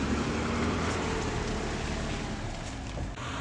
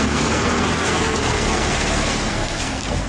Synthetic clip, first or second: second